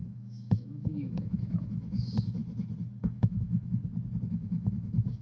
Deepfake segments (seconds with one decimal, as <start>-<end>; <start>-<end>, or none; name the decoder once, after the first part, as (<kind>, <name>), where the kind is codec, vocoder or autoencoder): 0.0-2.4 (autoencoder, DAC-VAE); 3.0-3.8; 4.3-5.2